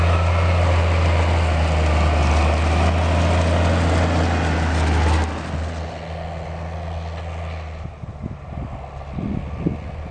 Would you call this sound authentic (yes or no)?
yes